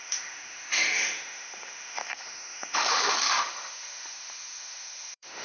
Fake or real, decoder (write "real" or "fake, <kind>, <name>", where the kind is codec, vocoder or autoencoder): fake, autoencoder, DAC-VAE